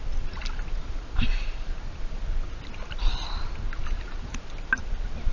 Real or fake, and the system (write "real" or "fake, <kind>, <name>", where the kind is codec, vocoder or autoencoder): real